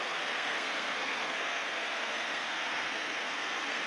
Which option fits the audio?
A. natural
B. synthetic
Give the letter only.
B